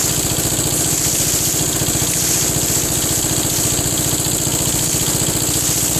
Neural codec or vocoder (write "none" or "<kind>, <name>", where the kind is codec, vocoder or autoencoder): none